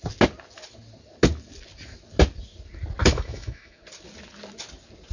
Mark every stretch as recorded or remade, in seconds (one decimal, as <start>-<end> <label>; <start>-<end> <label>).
0.0-3.0 recorded; 3.0-3.8 remade; 3.8-5.1 recorded